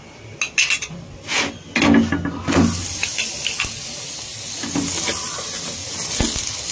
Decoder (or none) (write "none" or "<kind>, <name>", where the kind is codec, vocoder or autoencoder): none